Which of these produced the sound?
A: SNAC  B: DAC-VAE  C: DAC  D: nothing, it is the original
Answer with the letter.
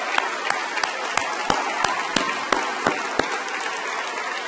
D